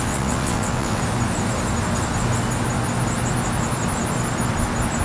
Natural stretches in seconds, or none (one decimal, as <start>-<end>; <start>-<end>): 1.0-5.0